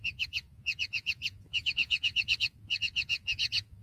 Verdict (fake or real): fake